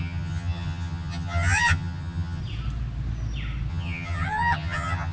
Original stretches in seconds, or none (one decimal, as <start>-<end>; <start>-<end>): 2.4-3.7